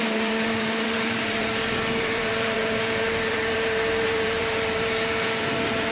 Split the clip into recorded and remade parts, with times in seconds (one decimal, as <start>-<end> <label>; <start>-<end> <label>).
0.0-5.9 remade